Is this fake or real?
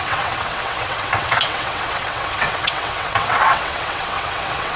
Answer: fake